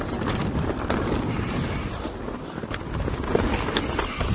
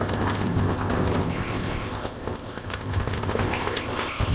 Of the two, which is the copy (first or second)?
second